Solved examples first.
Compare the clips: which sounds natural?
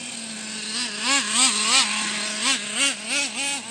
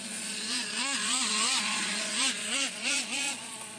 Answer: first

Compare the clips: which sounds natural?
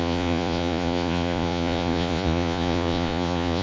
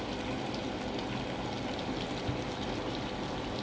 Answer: second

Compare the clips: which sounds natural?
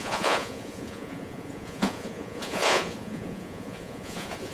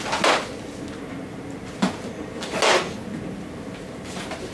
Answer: second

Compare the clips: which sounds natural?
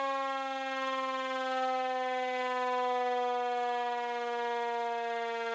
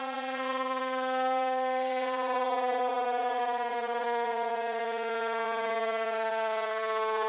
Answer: first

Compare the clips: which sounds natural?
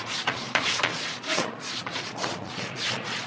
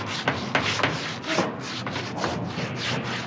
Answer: second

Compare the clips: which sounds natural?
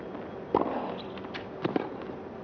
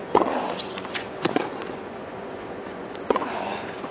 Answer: first